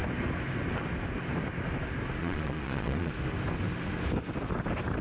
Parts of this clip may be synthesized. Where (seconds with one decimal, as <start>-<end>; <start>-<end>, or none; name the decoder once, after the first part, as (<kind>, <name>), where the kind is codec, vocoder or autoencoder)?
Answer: 2.2-3.1 (vocoder, Vocos)